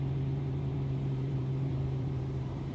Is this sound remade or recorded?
remade